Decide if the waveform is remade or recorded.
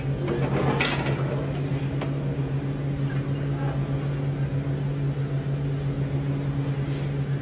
recorded